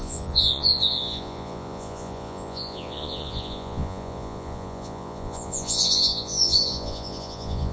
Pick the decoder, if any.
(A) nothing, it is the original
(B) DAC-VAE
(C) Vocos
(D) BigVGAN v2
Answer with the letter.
C